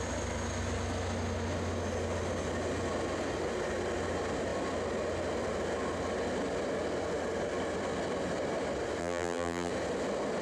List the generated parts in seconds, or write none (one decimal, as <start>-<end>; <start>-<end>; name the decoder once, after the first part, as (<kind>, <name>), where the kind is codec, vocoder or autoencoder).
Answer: 9.0-9.7 (vocoder, BigVGAN v2)